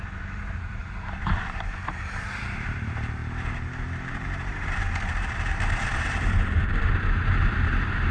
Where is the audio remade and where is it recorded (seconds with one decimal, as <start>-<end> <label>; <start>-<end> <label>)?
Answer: 0.0-8.1 remade